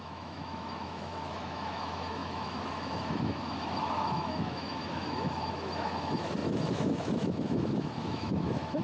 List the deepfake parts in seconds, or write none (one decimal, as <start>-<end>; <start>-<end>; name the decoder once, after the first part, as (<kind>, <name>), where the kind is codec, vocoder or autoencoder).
0.0-8.8 (autoencoder, DAC-VAE)